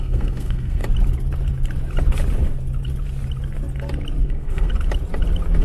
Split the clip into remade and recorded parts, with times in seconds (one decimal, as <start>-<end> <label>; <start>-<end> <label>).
0.0-0.8 remade; 0.8-4.2 recorded; 4.2-4.7 remade; 4.7-5.6 recorded